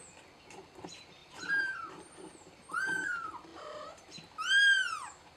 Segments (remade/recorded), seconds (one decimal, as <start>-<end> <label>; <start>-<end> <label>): 0.0-1.2 recorded; 1.2-2.7 remade; 2.7-3.5 recorded; 3.5-4.2 remade; 4.2-5.4 recorded